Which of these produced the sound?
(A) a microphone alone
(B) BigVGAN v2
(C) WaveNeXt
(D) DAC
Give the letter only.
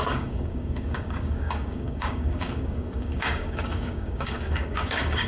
D